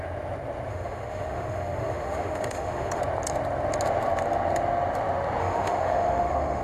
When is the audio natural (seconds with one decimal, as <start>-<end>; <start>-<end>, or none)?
0.0-0.7; 3.0-5.4